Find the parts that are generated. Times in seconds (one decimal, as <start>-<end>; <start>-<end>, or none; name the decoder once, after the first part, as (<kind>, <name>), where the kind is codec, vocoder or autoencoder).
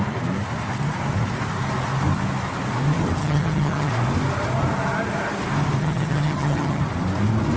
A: 3.2-3.9 (vocoder, HiFi-GAN); 5.8-6.8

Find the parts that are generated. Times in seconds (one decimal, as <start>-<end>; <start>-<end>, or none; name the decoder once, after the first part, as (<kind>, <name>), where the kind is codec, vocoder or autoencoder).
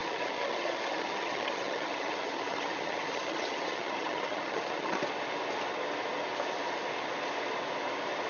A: 0.0-5.0 (vocoder, HiFi-GAN)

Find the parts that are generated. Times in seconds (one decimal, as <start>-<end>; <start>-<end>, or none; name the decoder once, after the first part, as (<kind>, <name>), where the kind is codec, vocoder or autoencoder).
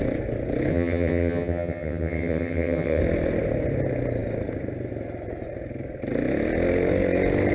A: 0.7-3.0 (vocoder, HiFi-GAN)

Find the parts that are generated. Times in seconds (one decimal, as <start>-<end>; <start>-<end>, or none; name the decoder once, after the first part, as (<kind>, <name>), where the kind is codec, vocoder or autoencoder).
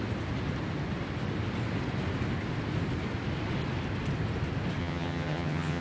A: 4.8-5.8 (vocoder, HiFi-GAN)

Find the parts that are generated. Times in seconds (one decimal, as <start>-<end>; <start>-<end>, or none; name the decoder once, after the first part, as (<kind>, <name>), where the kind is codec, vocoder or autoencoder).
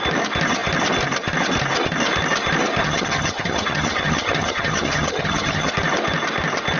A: 2.8-5.7 (vocoder, HiFi-GAN)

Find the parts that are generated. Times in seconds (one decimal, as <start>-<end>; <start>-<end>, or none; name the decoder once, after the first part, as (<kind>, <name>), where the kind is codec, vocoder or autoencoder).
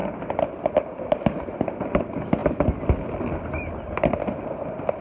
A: none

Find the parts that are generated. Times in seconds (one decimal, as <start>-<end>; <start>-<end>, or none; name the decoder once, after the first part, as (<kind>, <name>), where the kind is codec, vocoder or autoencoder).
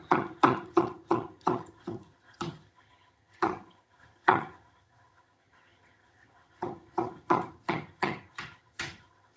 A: 0.0-9.4 (vocoder, HiFi-GAN)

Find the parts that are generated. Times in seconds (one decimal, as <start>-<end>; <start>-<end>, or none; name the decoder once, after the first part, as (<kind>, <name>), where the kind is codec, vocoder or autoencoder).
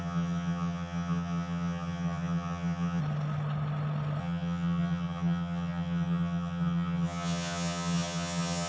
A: 0.0-3.0 (vocoder, HiFi-GAN); 4.2-8.7